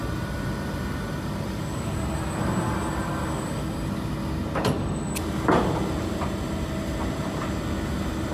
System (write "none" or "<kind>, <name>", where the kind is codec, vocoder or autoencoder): none